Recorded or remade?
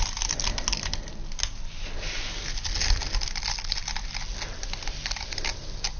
recorded